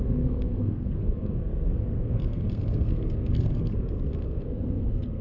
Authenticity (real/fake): fake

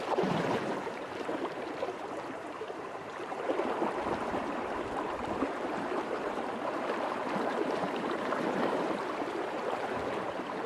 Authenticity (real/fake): fake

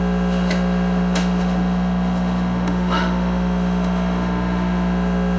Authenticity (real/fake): fake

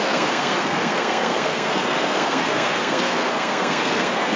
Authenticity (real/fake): fake